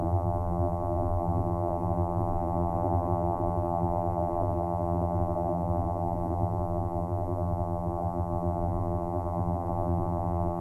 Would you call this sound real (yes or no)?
no